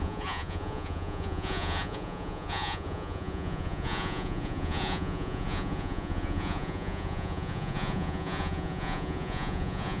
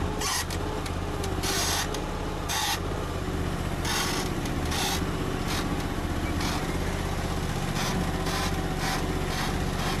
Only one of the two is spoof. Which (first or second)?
first